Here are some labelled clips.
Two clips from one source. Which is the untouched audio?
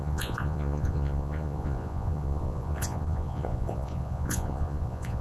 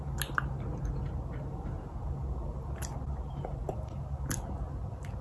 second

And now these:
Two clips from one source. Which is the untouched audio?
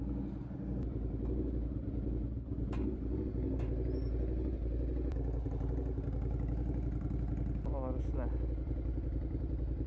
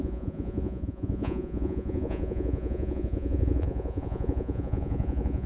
first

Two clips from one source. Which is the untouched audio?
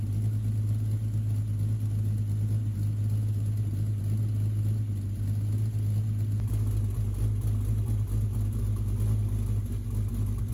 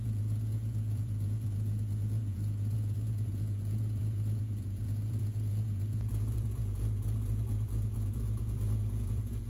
first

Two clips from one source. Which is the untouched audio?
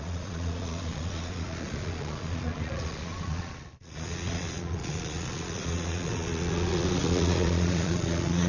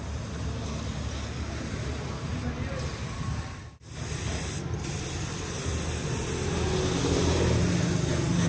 second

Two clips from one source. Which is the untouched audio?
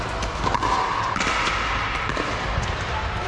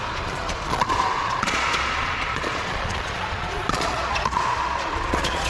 first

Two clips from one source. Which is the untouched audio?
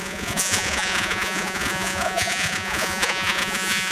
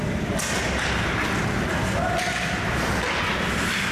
second